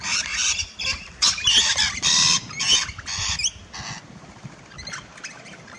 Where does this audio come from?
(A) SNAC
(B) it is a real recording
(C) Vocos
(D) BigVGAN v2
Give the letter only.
B